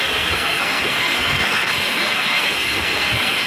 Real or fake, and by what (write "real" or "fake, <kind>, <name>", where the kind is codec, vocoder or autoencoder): fake, codec, SNAC